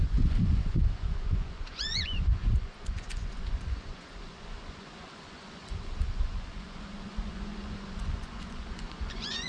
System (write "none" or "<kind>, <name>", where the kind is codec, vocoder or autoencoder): vocoder, Vocos